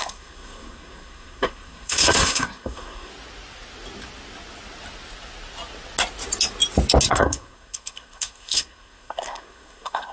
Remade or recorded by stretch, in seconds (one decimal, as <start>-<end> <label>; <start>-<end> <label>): 0.0-3.1 remade; 3.1-7.1 recorded; 7.1-10.1 remade